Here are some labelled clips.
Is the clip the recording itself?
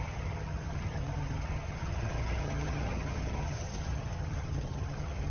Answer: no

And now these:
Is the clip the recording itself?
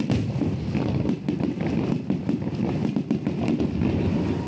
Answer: yes